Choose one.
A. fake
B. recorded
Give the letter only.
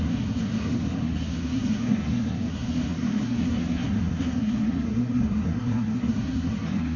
A